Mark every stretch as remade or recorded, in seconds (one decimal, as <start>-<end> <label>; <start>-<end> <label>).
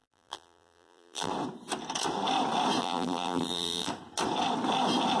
0.0-1.3 remade; 1.3-2.8 recorded; 2.8-3.9 remade; 3.9-5.2 recorded